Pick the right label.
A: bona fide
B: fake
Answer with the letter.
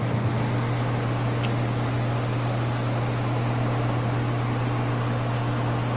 A